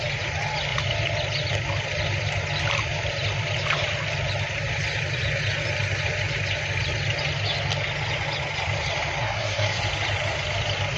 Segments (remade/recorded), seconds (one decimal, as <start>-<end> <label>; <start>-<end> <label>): 0.0-9.2 recorded; 9.2-9.8 remade; 9.8-11.0 recorded